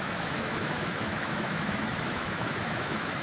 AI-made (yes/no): yes